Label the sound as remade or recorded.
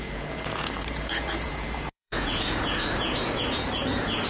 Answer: remade